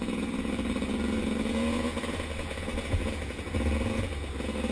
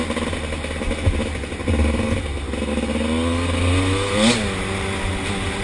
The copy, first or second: first